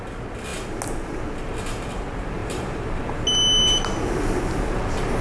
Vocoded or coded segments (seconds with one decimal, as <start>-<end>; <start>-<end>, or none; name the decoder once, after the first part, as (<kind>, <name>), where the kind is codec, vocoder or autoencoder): 2.4-3.0 (vocoder, BigVGAN v2)